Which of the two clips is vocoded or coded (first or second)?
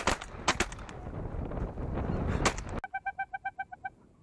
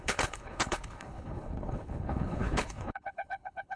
second